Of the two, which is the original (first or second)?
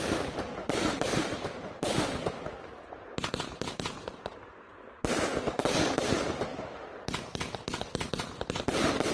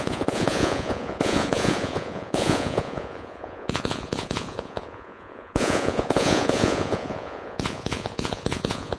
first